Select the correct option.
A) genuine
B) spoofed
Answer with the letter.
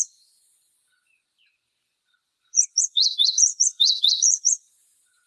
B